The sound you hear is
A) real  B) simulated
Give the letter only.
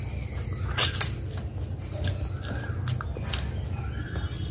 A